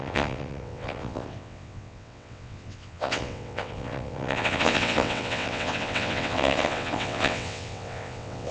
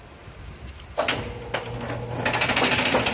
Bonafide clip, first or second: second